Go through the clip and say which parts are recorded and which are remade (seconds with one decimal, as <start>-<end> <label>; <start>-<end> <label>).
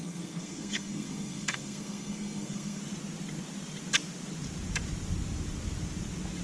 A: 0.0-2.8 remade; 2.8-6.4 recorded